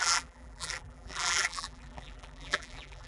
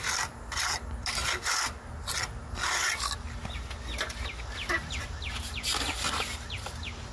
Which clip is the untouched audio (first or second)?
second